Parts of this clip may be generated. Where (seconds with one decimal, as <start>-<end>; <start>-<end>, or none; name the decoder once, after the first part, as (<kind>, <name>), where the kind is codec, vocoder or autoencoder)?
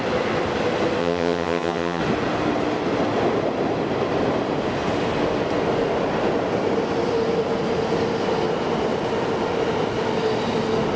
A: 1.0-2.0 (vocoder, HiFi-GAN)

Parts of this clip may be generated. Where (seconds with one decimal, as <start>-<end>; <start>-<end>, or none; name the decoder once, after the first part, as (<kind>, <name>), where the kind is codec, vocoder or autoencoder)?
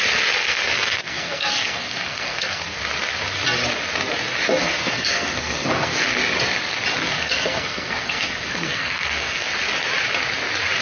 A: 0.4-2.8 (codec, SNAC); 4.6-6.1; 7.0-9.5